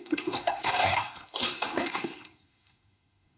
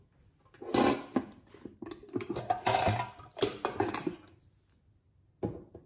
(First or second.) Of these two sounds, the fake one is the first